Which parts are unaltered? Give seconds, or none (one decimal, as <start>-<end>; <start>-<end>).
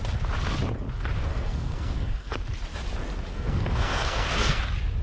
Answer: 0.0-1.3; 2.3-3.3; 4.6-5.0